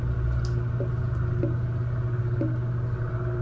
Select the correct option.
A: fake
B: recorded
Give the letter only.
B